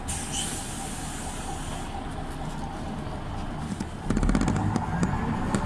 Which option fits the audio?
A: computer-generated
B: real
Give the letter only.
B